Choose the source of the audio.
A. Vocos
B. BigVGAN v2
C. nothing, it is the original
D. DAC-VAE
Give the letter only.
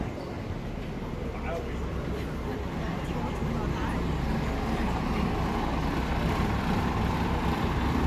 C